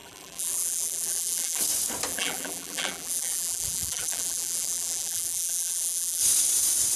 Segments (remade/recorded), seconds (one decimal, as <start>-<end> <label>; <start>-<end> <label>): 0.0-1.6 remade; 1.6-2.1 recorded; 2.1-6.2 remade; 6.2-7.0 recorded